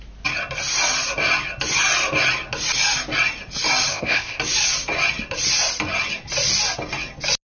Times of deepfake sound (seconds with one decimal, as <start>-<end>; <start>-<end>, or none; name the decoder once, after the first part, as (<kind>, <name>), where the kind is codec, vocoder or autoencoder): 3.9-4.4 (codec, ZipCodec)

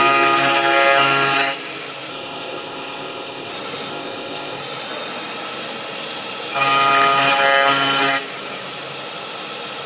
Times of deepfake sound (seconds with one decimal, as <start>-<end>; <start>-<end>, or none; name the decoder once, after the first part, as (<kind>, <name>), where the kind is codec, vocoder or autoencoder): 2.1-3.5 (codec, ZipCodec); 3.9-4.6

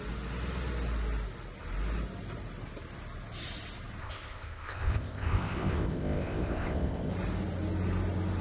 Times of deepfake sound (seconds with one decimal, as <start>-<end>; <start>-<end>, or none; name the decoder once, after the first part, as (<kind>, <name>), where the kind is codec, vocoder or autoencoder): 4.0-7.1 (codec, ZipCodec)